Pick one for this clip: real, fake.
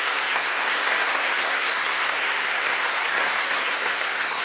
fake